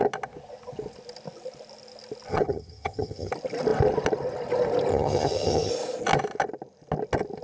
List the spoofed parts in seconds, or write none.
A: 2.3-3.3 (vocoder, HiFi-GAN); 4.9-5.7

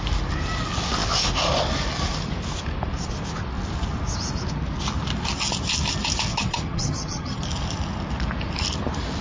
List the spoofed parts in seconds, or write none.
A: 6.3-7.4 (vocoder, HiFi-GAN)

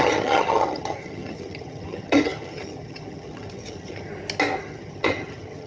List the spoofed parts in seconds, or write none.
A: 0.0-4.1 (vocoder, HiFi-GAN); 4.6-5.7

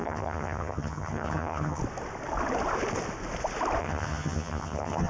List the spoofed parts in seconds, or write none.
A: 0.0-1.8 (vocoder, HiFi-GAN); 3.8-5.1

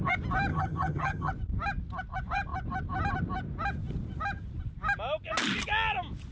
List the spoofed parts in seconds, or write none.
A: 0.5-1.3 (vocoder, HiFi-GAN)

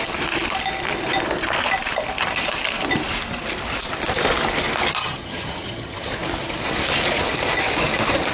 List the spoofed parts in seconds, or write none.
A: 5.0-6.1 (vocoder, HiFi-GAN)

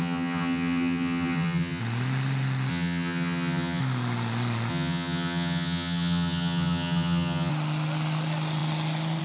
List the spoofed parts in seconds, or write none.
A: 0.0-1.8 (vocoder, HiFi-GAN); 2.7-3.8; 4.7-7.5

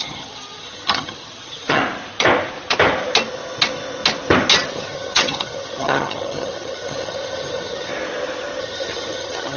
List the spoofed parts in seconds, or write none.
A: 0.0-1.8 (vocoder, HiFi-GAN); 4.7-7.9; 8.6-9.6